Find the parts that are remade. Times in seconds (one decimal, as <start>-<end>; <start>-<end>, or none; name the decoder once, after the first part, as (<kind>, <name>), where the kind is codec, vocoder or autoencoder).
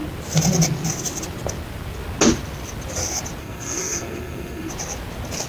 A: 3.4-4.7 (codec, SNAC)